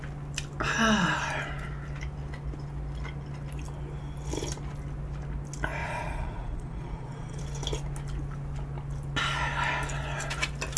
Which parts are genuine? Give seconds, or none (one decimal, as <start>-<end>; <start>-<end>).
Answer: 0.0-5.8; 7.4-10.8